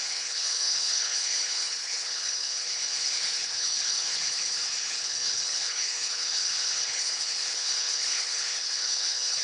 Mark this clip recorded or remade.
remade